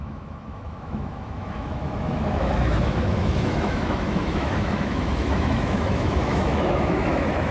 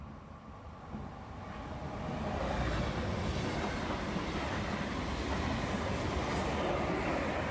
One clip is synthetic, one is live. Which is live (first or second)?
second